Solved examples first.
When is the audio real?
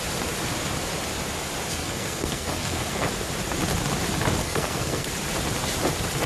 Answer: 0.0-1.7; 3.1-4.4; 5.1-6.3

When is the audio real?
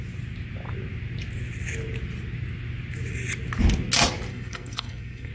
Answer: 0.0-4.3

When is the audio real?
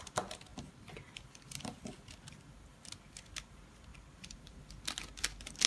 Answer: 0.0-3.9; 4.6-5.7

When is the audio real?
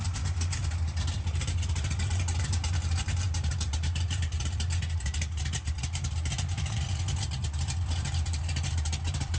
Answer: 0.6-1.4